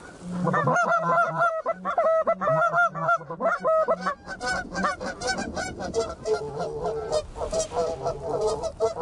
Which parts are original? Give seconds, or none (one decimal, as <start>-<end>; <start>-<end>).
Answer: 0.0-9.0